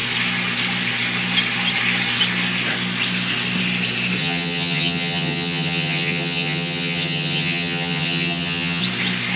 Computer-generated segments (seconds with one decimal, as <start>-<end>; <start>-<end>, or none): 4.2-8.8